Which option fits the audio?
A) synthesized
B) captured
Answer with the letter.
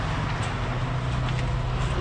B